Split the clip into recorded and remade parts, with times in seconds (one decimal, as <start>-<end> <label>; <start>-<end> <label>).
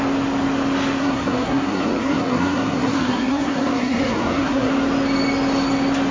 0.0-1.0 recorded; 1.0-4.7 remade; 4.7-6.1 recorded